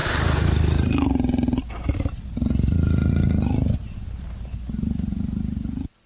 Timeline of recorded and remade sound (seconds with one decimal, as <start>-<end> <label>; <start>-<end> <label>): 0.0-6.1 recorded